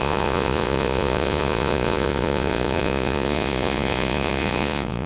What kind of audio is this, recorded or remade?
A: remade